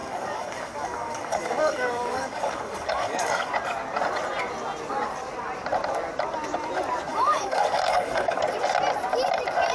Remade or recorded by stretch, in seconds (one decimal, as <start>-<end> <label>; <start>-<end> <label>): 0.0-3.5 remade; 3.5-7.1 recorded; 7.1-8.4 remade; 8.4-9.7 recorded